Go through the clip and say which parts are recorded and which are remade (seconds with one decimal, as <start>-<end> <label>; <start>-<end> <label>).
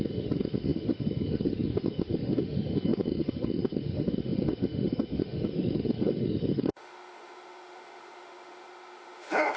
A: 0.0-9.6 remade